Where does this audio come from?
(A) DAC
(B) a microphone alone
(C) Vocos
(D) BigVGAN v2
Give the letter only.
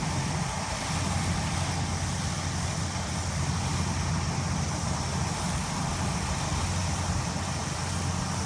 B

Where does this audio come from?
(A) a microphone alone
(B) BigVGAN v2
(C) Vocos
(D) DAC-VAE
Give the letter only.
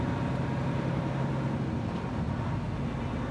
A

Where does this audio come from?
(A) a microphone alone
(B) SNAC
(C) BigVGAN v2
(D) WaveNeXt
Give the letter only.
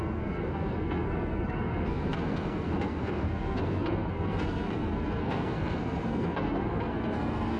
B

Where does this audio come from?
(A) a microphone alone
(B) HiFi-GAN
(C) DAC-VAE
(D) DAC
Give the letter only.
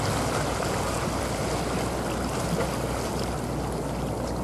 A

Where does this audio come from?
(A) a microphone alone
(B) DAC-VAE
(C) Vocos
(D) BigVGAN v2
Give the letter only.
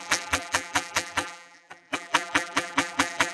D